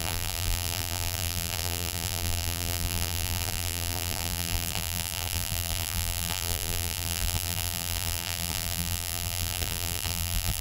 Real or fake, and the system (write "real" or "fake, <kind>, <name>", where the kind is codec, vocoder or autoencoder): fake, vocoder, BigVGAN v2